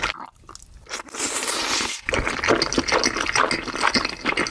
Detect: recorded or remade recorded